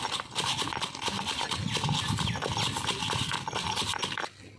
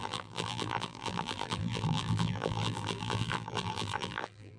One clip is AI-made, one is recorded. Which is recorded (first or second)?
first